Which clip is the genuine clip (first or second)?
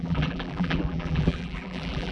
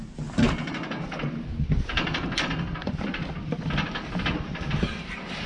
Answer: second